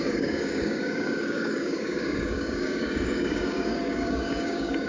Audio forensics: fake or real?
fake